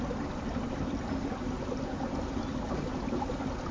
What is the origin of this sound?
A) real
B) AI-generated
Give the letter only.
A